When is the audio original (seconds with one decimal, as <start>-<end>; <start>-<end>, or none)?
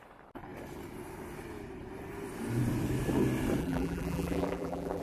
0.0-3.6